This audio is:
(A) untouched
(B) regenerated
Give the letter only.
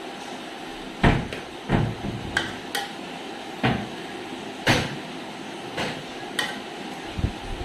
A